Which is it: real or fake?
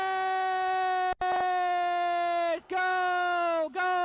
real